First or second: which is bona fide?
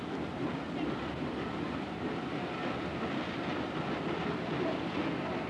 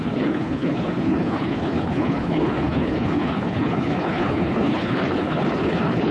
first